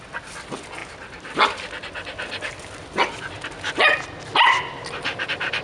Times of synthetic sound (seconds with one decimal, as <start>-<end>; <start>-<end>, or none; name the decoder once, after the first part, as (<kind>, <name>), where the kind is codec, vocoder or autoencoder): none